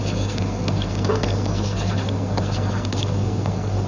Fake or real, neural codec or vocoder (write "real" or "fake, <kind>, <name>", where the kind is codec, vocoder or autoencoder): fake, codec, SNAC